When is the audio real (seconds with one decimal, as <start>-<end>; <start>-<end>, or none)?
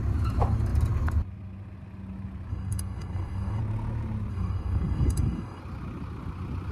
0.0-2.5; 3.6-4.3; 5.6-6.7